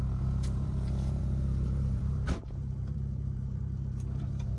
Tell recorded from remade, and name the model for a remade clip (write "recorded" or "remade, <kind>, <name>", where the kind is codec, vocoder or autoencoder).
remade, vocoder, BigVGAN v2